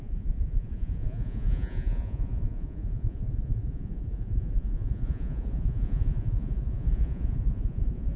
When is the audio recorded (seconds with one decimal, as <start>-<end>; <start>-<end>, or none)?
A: none